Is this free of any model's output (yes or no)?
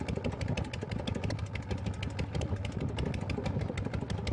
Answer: yes